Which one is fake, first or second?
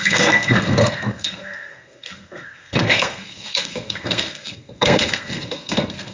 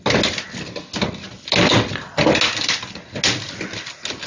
first